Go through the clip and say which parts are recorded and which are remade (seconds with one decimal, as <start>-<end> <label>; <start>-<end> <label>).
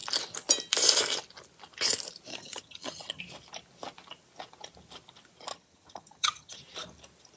0.0-2.3 recorded; 2.3-3.2 remade; 3.2-5.5 recorded; 5.5-6.6 remade; 6.6-7.4 recorded